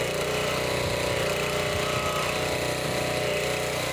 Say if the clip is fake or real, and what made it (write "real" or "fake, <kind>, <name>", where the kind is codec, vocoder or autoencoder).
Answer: real